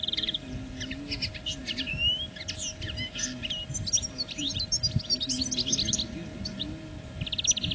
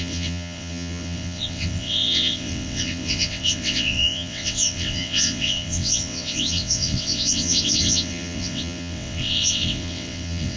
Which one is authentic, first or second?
first